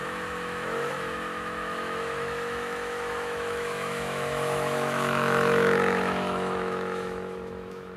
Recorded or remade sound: remade